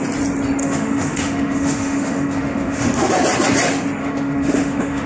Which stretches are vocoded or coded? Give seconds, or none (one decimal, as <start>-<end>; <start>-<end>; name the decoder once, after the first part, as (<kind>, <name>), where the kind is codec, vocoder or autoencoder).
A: 0.6-3.1 (autoencoder, DAC-VAE); 4.0-5.1